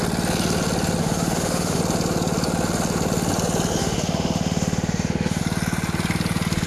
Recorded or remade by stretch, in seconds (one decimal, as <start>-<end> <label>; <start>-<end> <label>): 0.0-1.0 recorded; 1.0-1.8 remade; 1.8-3.8 recorded; 3.8-5.4 remade; 5.4-6.7 recorded